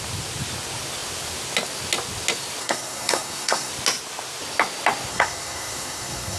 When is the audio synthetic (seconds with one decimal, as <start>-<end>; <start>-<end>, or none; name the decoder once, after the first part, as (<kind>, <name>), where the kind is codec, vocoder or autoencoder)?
2.6-3.7 (codec, SNAC); 5.1-6.4